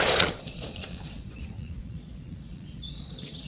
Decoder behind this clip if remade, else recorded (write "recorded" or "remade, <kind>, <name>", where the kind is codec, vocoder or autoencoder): remade, vocoder, Vocos